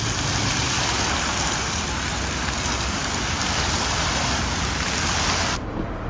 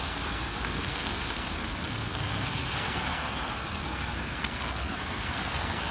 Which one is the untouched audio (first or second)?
first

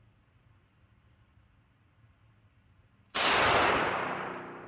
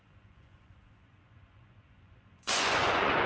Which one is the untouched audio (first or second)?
first